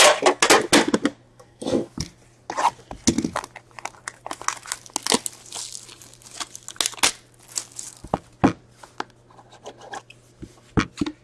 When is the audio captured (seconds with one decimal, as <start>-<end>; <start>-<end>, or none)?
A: 0.0-1.3; 1.9-11.2